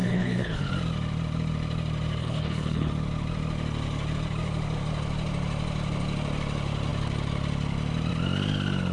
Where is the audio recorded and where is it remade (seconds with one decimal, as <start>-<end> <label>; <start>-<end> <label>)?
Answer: 0.0-0.7 remade; 0.7-2.2 recorded; 2.2-2.9 remade; 2.9-8.9 recorded